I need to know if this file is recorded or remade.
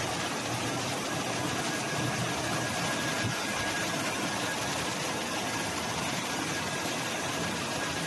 recorded